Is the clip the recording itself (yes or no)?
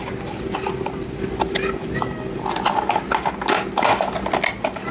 yes